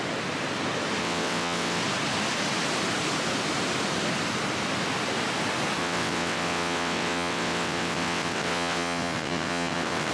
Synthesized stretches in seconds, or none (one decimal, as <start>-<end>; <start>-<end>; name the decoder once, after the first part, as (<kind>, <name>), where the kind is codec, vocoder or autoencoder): 1.0-1.8 (vocoder, WaveNeXt); 5.8-10.1